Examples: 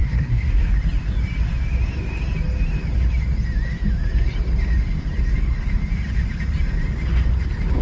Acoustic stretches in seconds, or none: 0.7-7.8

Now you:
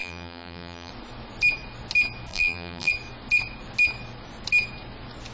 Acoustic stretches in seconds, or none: 0.9-2.3; 2.9-5.3

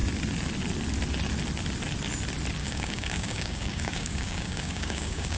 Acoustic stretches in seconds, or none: 0.0-2.6

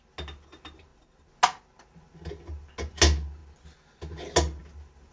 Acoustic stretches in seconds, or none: 0.0-5.1

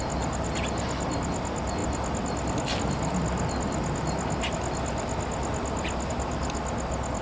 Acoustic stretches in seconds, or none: 0.0-7.2

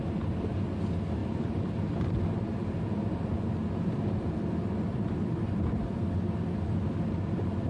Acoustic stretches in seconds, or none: 0.0-1.2; 1.9-3.6; 5.0-7.7